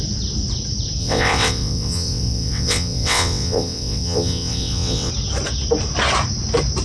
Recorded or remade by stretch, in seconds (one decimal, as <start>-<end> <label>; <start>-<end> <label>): 0.0-1.0 recorded; 1.0-5.1 remade; 5.1-6.8 recorded